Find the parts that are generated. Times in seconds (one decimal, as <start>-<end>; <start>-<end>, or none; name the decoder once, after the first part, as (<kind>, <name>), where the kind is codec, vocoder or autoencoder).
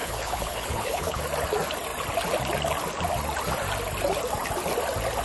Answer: 0.0-1.2 (codec, HILCodec)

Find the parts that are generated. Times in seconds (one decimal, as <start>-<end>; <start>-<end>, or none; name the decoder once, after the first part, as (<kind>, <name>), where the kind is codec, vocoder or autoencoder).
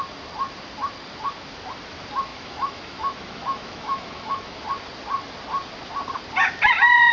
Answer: 2.3-4.6 (autoencoder, DAC-VAE)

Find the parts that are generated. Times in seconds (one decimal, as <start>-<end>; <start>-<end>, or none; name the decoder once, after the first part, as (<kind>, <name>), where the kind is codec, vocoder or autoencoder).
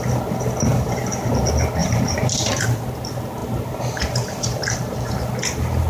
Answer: 0.7-1.3 (vocoder, BigVGAN v2); 1.8-2.6; 3.4-5.1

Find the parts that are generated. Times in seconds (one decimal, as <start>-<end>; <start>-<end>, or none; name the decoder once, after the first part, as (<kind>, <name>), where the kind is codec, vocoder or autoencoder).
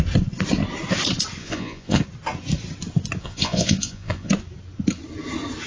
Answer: 1.4-2.0 (vocoder, Vocos); 3.2-4.3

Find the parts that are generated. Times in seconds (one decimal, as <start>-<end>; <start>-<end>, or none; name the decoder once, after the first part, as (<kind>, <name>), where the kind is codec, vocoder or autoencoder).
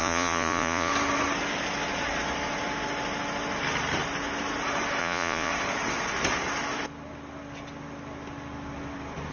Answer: 0.0-0.9 (vocoder, Vocos); 5.0-5.5